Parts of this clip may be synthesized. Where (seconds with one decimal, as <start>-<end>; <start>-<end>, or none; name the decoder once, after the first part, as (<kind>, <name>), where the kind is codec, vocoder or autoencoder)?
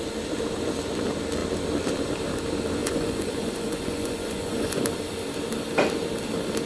2.8-4.8 (vocoder, Vocos)